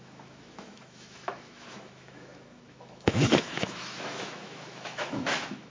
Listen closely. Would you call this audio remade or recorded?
remade